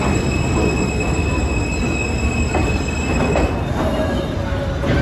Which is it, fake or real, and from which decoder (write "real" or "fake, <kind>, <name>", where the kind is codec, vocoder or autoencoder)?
real